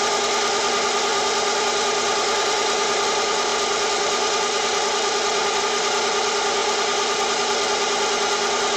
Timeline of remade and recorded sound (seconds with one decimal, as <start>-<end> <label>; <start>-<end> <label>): 0.0-1.1 recorded; 1.1-1.6 remade; 1.6-8.8 recorded